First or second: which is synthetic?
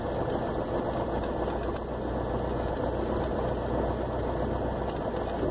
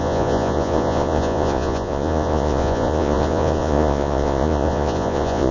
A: second